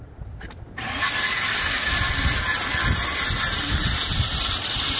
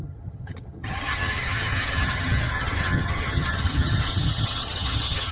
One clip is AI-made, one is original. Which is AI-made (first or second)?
second